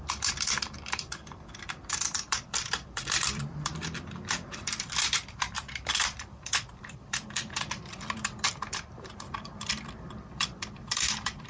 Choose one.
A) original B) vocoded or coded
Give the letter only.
B